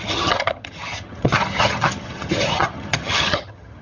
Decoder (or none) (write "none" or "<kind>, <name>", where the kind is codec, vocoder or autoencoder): vocoder, HiFi-GAN